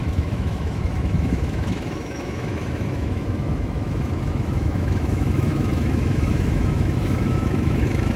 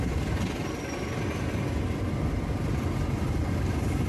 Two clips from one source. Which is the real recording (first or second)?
second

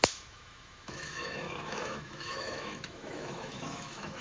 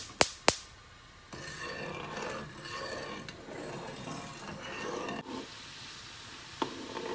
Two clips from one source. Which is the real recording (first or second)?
second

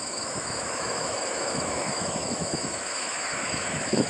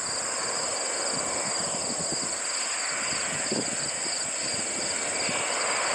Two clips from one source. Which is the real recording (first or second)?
second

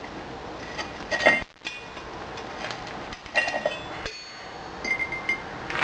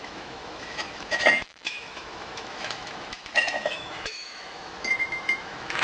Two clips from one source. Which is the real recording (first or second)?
first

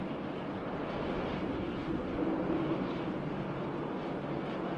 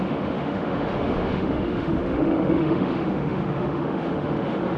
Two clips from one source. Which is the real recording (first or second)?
first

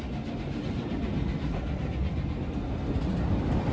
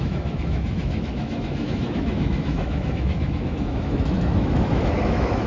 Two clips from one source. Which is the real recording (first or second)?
first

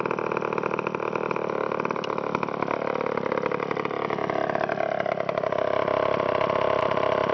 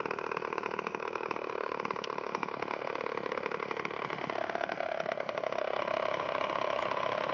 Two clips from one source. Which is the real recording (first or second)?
first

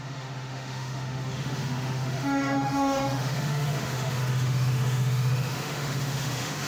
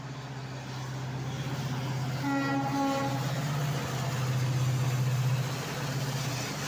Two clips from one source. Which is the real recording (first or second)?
second